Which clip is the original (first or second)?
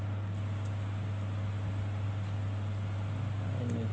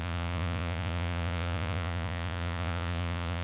first